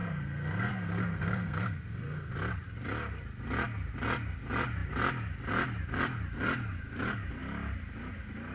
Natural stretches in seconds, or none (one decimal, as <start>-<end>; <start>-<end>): 2.3-8.5